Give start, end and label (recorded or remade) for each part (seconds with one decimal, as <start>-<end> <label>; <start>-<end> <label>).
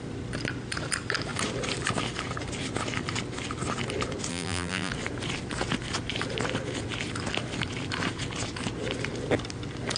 0.0-4.3 recorded; 4.3-4.9 remade; 4.9-10.0 recorded